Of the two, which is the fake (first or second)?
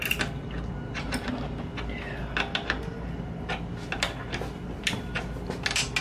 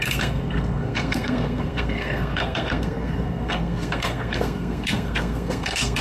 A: second